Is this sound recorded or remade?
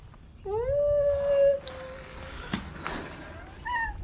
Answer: recorded